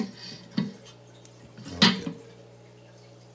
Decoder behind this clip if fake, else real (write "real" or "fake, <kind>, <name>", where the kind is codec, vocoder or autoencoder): real